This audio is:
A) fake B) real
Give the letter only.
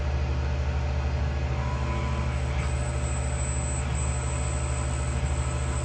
B